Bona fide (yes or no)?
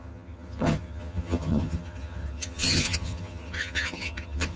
no